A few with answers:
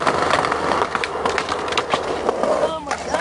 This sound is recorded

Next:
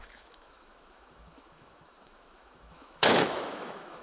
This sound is remade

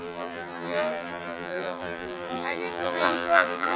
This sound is remade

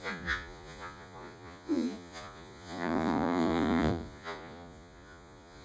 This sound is remade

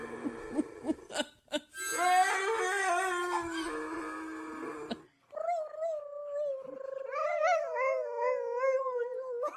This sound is recorded